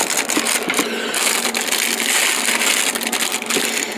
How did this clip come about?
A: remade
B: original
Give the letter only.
B